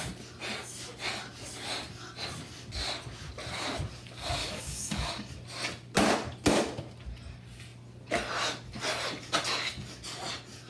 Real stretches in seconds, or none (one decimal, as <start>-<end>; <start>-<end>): 0.0-4.4; 5.3-10.7